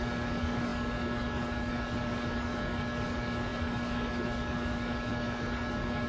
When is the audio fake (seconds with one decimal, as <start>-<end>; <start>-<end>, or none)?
0.0-6.1